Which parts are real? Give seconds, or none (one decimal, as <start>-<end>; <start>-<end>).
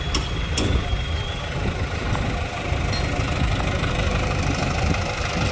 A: 0.0-4.1; 5.0-5.5